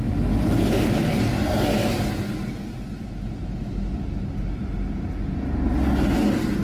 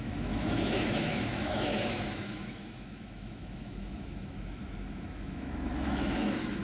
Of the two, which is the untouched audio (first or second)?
first